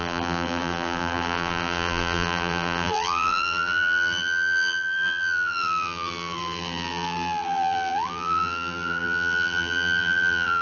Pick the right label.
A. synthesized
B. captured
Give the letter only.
A